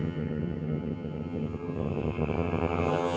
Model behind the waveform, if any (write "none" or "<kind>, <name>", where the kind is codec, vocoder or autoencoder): vocoder, HiFi-GAN